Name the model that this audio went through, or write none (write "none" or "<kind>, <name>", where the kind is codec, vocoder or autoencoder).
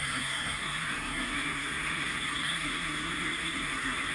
codec, SNAC